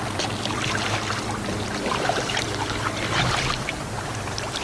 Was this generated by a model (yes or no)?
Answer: yes